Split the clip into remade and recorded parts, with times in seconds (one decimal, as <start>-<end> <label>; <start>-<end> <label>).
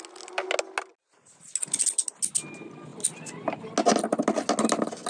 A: 0.0-5.1 recorded